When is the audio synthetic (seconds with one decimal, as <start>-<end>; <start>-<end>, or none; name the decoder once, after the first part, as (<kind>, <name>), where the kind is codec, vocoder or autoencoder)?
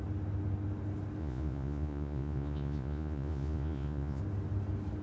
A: 1.2-4.2 (vocoder, Vocos)